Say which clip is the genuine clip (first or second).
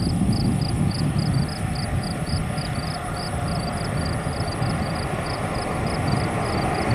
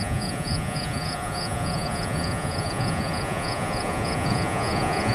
first